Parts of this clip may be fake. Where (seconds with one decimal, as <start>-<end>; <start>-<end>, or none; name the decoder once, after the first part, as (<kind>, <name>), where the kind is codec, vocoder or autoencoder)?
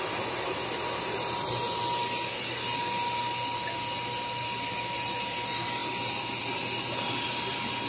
none